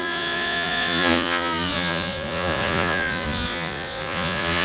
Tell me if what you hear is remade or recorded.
remade